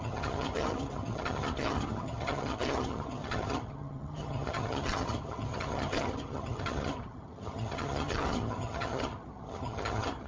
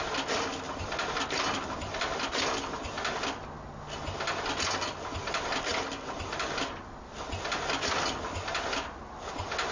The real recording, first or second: second